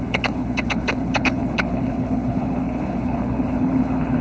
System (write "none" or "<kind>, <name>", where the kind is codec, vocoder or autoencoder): codec, HILCodec